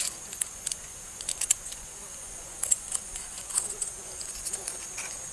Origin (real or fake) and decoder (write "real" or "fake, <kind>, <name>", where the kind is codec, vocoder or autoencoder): fake, vocoder, Vocos